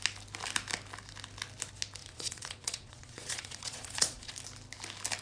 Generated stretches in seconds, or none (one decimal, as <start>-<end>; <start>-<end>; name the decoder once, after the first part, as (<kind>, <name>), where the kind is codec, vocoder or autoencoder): 2.0-4.3 (vocoder, Vocos)